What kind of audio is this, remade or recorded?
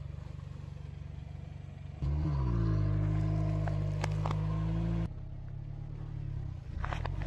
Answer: recorded